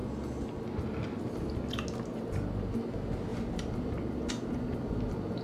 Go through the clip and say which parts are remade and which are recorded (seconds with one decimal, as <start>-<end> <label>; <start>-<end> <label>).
0.0-5.4 recorded